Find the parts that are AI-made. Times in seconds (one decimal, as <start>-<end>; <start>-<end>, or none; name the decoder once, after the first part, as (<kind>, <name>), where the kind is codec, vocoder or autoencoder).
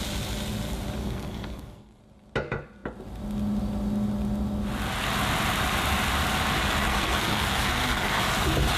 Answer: 1.0-2.0 (codec, SNAC); 6.8-8.2